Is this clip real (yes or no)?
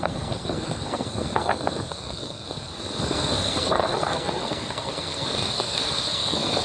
no